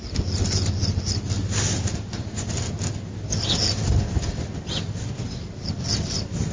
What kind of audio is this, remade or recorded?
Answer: recorded